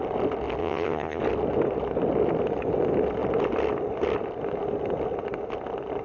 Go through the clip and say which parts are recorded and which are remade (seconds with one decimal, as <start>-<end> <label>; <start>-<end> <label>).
0.0-0.6 recorded; 0.6-1.2 remade; 1.2-6.0 recorded